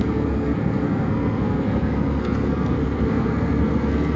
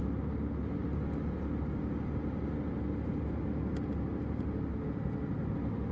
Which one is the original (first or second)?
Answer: second